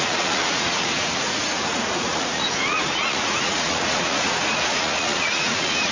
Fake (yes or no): yes